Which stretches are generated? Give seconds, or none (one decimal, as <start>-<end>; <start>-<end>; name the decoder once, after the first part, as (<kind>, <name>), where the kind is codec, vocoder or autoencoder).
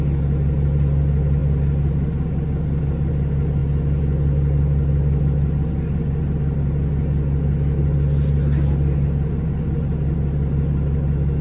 none